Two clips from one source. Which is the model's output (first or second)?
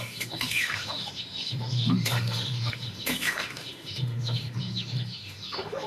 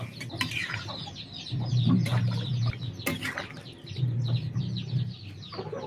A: first